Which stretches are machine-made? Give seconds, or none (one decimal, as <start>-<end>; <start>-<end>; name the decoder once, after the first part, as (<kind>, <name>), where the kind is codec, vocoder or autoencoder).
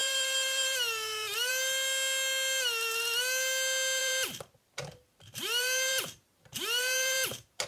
0.0-1.5 (vocoder, BigVGAN v2); 4.0-7.7